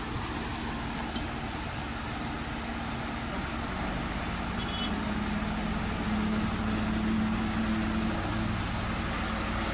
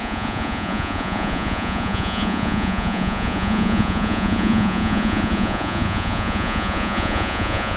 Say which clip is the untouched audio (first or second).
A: first